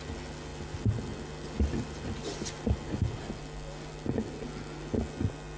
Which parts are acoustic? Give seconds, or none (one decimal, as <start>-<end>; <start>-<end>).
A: 0.0-5.6